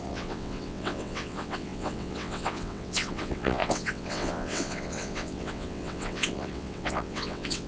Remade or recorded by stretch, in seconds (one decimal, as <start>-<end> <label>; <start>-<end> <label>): 0.0-7.7 remade